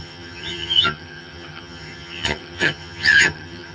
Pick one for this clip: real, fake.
fake